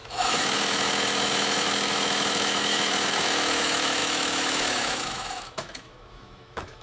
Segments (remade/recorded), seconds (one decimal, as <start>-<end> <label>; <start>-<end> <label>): 0.0-6.8 remade